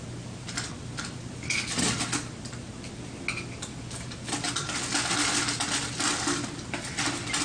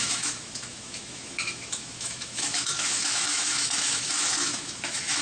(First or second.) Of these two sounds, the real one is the first